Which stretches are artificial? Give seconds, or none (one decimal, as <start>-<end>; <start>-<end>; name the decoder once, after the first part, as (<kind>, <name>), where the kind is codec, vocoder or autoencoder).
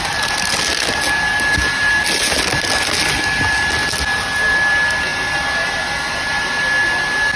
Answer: none